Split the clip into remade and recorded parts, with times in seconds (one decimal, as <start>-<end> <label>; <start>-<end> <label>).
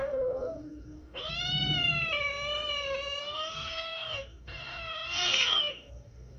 0.0-1.3 remade; 1.3-3.2 recorded; 3.2-6.4 remade